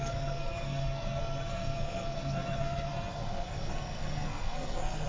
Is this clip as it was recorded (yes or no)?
no